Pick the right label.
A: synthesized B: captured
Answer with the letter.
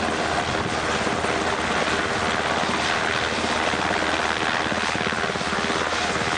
B